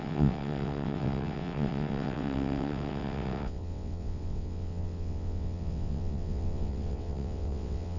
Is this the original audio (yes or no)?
no